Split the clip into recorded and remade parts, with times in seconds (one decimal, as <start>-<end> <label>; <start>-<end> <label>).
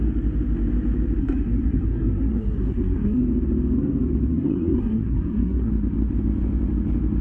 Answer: 0.0-1.2 recorded; 1.2-3.2 remade; 3.2-4.3 recorded; 4.3-5.7 remade; 5.7-7.2 recorded